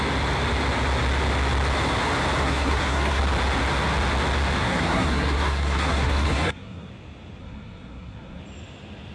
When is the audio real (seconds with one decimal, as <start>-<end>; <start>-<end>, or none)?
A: 0.0-2.4; 3.2-4.6; 6.9-7.4; 8.4-9.1